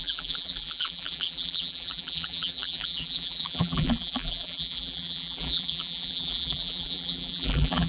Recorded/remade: remade